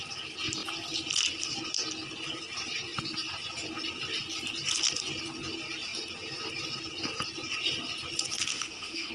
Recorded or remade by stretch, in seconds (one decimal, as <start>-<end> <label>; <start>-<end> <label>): 0.0-8.5 recorded; 8.5-9.1 remade